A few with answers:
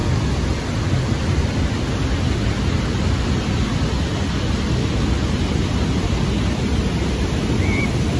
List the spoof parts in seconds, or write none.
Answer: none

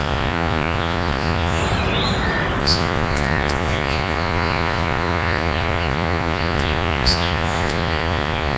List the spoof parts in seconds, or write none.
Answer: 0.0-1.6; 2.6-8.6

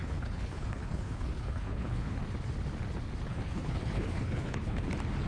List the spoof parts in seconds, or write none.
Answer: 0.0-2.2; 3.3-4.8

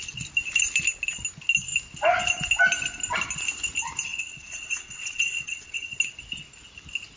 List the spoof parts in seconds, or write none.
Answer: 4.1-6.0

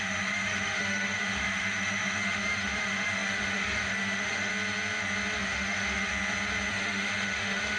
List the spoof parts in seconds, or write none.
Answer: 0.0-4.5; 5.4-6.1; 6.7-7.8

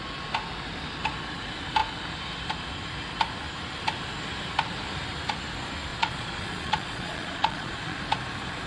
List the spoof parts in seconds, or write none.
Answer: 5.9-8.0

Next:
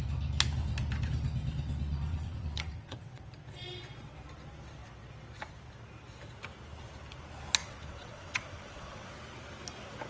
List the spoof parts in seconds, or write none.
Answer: 1.9-3.2; 7.6-9.2

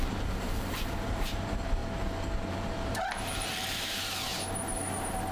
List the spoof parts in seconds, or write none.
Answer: 0.0-1.8; 2.5-4.3